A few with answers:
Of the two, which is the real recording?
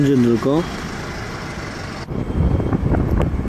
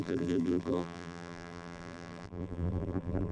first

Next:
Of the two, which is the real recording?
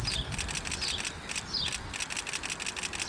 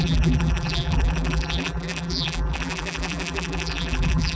first